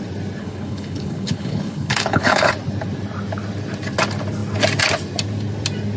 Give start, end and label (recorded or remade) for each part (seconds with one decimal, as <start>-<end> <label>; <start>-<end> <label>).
0.0-0.4 recorded; 0.4-2.5 remade; 2.5-6.0 recorded